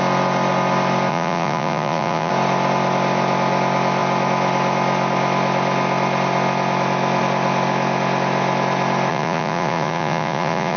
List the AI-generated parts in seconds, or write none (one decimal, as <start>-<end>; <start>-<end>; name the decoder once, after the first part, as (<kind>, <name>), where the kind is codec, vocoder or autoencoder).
1.1-2.3 (vocoder, Vocos); 9.1-10.8